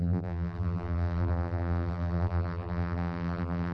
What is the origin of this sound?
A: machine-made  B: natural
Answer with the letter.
A